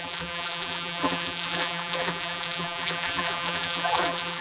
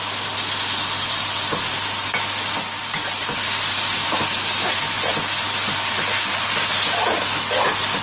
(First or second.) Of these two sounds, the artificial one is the first